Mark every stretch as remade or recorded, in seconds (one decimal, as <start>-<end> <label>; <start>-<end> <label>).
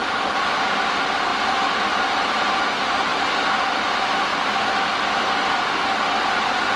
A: 0.0-1.3 remade; 1.3-1.9 recorded; 1.9-3.1 remade; 3.1-3.7 recorded; 3.7-4.3 remade; 4.3-5.7 recorded; 5.7-6.8 remade